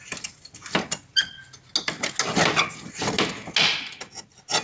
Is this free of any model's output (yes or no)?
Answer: yes